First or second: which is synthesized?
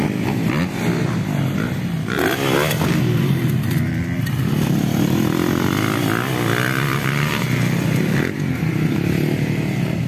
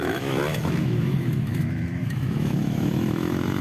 second